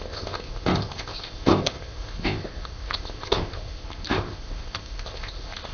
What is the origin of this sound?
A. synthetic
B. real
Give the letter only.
A